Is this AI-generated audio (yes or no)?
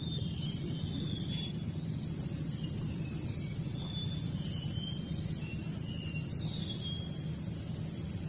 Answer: no